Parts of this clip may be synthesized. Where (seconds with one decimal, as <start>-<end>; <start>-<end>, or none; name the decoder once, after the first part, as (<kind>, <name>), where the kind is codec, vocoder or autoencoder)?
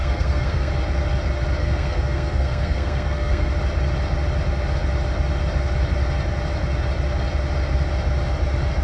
0.0-0.7 (codec, SNAC); 1.6-3.5